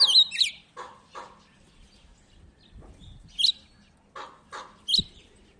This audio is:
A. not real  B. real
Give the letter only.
B